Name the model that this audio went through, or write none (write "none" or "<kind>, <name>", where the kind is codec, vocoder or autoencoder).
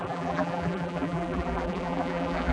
vocoder, BigVGAN v2